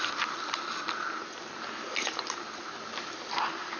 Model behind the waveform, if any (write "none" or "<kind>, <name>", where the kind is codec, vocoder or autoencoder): none